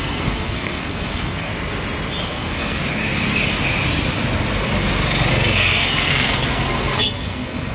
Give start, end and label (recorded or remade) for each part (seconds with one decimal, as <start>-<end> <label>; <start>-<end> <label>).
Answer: 0.0-1.5 remade; 1.5-2.2 recorded; 2.2-2.8 remade; 2.8-5.3 recorded; 5.3-7.7 remade